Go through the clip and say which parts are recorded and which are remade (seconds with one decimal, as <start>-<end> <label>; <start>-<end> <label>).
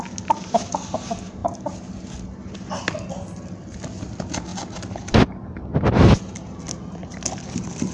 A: 0.0-7.9 recorded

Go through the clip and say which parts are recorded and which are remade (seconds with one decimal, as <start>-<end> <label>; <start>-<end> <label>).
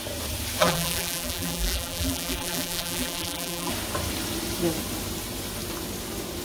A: 0.0-0.6 recorded; 0.6-3.7 remade; 3.7-6.4 recorded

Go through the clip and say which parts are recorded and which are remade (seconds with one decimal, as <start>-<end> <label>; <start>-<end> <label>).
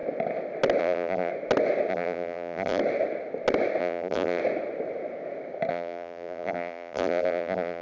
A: 0.0-0.8 recorded; 0.8-1.3 remade; 1.3-1.9 recorded; 1.9-2.8 remade; 2.8-3.8 recorded; 3.8-4.4 remade; 4.4-5.7 recorded; 5.7-7.8 remade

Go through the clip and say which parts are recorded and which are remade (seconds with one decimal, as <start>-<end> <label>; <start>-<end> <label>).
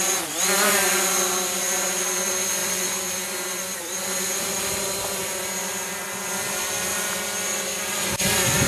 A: 0.0-8.7 remade